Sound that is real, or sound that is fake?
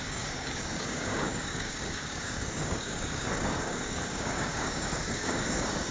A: fake